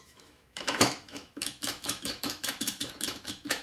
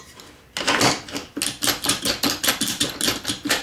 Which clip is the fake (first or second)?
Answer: first